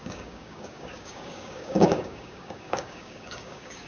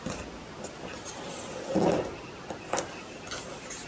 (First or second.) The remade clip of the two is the first